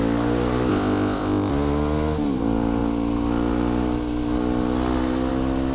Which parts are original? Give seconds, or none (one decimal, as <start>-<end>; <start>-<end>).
0.0-0.7; 1.5-5.7